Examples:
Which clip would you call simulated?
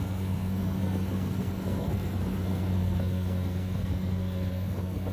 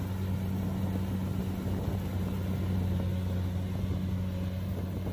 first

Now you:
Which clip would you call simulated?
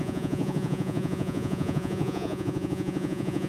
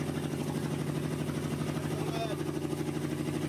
first